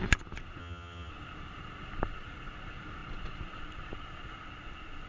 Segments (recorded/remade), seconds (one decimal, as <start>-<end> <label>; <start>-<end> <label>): 0.0-0.6 recorded; 0.6-1.1 remade; 1.1-5.1 recorded